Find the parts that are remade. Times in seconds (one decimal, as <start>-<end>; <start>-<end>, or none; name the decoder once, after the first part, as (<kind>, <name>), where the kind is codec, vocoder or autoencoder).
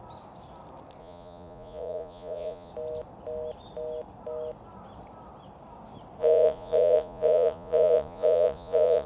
1.0-2.7 (vocoder, Vocos); 6.2-9.1